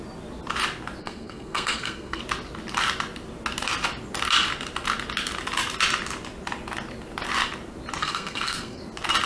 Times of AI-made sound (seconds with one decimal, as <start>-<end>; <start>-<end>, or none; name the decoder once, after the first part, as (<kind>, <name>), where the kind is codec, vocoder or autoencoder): 1.0-2.2 (codec, SNAC); 8.0-8.8